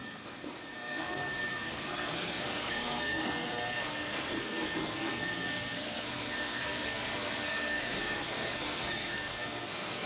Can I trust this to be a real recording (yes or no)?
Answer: no